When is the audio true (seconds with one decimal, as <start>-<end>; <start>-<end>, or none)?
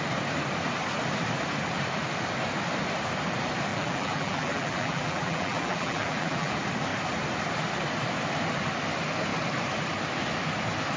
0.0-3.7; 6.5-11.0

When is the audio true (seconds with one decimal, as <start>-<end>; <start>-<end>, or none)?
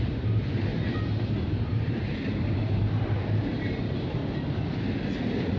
0.7-1.7; 4.2-4.8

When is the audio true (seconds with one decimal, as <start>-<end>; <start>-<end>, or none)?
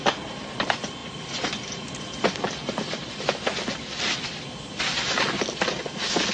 0.0-6.3